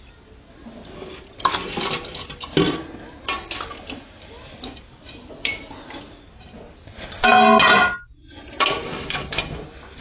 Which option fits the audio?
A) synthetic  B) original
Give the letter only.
B